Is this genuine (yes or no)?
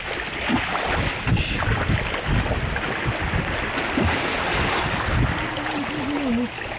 yes